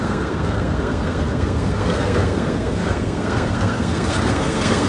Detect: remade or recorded remade